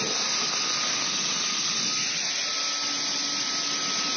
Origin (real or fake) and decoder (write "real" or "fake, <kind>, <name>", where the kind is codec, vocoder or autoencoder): real